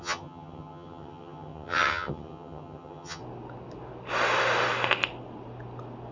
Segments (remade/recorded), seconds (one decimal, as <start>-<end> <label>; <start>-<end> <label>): 0.0-3.2 remade; 3.2-6.1 recorded